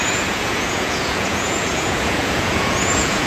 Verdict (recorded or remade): remade